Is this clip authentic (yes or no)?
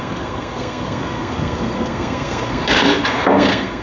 no